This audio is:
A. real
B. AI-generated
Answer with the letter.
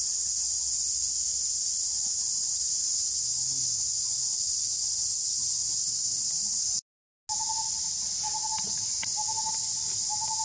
A